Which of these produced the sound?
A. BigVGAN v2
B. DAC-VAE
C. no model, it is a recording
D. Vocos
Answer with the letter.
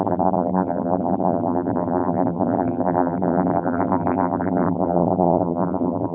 A